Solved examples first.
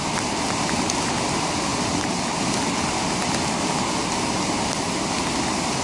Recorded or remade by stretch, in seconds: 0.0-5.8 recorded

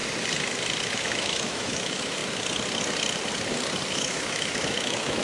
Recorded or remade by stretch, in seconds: 0.0-0.8 recorded; 0.8-2.2 remade; 2.2-3.9 recorded; 3.9-5.2 remade

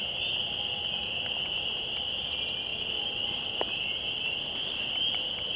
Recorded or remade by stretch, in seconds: 0.0-5.6 recorded